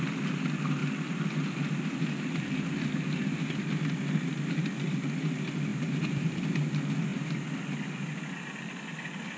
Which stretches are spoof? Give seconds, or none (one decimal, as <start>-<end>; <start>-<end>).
5.7-6.4